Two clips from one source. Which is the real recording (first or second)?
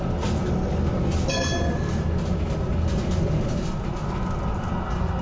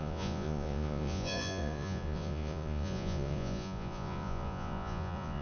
first